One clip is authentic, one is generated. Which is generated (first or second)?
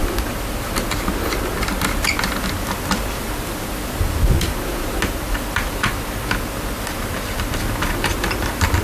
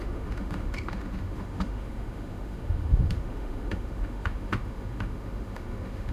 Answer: second